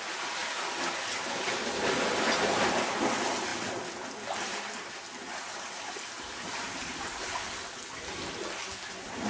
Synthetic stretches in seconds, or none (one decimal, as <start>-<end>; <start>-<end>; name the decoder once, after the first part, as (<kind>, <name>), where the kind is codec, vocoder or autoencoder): none